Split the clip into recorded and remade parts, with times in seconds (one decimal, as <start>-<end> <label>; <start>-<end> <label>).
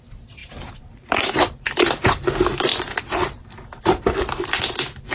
0.0-0.4 recorded; 0.4-1.3 remade; 1.3-5.1 recorded